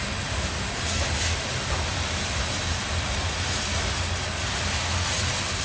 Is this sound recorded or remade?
recorded